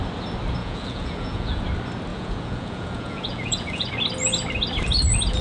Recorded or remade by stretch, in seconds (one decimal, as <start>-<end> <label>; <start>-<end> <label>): 0.0-0.6 recorded; 0.6-1.6 remade; 1.6-2.1 recorded; 2.1-3.9 remade; 3.9-5.4 recorded